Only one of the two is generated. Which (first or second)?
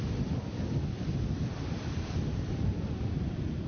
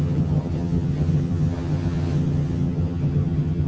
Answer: second